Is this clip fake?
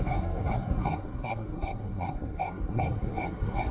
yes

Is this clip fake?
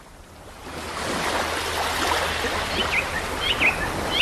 no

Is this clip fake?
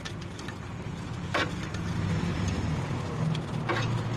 no